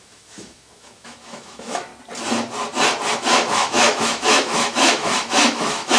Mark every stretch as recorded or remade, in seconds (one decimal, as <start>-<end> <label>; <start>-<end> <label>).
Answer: 0.0-1.9 remade; 1.9-3.1 recorded; 3.1-6.0 remade